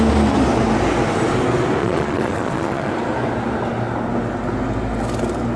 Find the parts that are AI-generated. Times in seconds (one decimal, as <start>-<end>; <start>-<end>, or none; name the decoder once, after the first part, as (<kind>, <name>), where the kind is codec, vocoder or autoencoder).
1.8-2.9 (vocoder, Vocos)